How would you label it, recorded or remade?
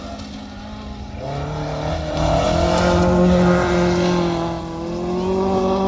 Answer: recorded